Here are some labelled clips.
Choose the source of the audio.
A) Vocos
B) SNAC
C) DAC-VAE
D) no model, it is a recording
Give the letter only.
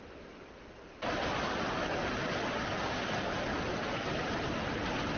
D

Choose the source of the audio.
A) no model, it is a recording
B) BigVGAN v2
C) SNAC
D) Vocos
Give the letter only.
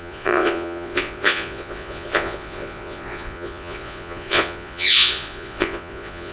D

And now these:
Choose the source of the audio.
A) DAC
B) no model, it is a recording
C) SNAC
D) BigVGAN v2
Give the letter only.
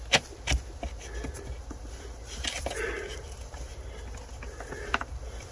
B